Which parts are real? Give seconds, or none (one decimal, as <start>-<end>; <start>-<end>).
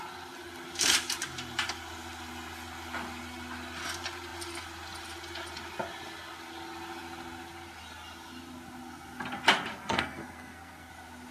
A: 0.0-9.7; 10.9-11.3